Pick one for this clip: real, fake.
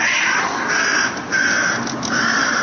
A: real